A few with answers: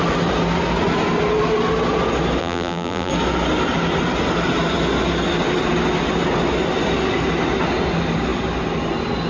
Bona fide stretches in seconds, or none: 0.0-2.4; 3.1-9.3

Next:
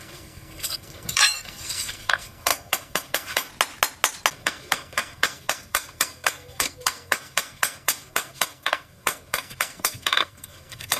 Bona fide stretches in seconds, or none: 3.5-4.3